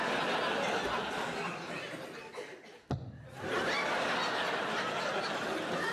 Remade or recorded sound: recorded